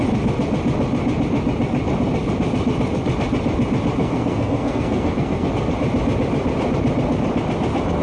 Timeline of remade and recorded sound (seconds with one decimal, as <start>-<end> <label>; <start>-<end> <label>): 0.0-4.0 recorded; 4.0-5.5 remade; 5.5-8.0 recorded